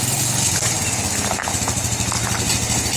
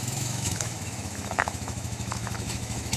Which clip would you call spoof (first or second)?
second